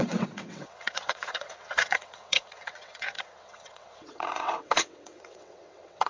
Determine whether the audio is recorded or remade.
remade